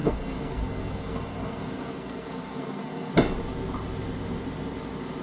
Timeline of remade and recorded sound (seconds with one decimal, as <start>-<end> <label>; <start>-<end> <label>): 0.0-3.1 remade; 3.1-5.2 recorded